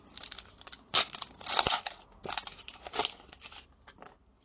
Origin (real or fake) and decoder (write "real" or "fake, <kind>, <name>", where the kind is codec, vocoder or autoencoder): real